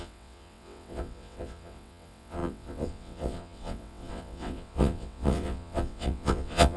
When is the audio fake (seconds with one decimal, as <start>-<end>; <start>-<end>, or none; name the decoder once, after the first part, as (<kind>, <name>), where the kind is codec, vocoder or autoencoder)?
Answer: 0.0-6.8 (vocoder, WaveNeXt)